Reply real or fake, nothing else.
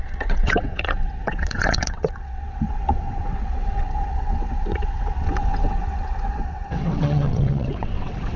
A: fake